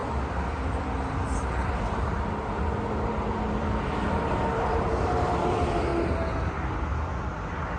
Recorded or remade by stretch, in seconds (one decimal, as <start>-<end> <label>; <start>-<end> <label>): 0.0-5.9 remade; 5.9-6.4 recorded; 6.4-6.9 remade; 6.9-7.8 recorded